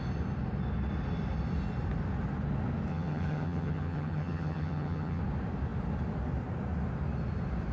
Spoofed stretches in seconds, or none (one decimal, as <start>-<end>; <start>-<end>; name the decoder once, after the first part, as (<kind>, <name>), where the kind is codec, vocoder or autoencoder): 2.9-5.2 (vocoder, HiFi-GAN)